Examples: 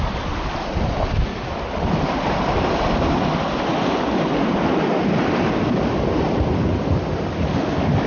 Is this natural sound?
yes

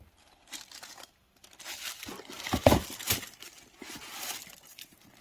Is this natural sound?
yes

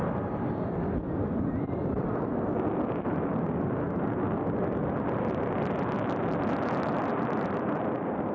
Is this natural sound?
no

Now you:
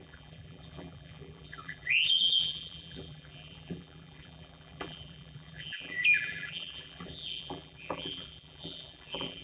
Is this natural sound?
no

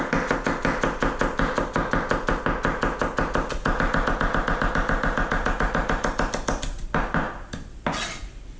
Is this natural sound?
yes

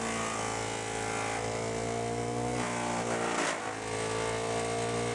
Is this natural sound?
yes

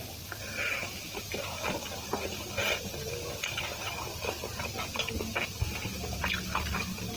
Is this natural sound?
yes